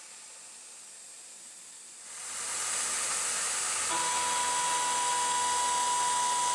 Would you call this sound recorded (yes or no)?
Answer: yes